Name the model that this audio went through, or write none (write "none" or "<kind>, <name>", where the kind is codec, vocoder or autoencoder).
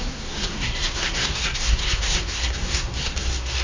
codec, SNAC